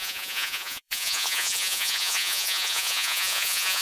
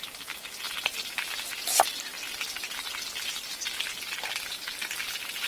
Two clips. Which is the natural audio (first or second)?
second